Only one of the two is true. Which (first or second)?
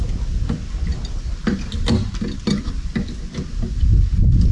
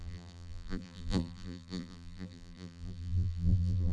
first